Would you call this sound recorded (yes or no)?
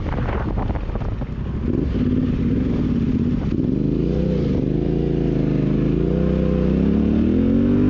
yes